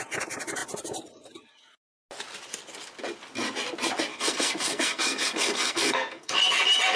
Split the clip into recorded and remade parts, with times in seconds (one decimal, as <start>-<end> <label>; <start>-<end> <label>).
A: 0.0-4.1 recorded; 4.1-6.3 remade; 6.3-7.0 recorded